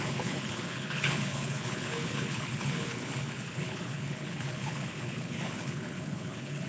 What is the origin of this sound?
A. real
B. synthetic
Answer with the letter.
B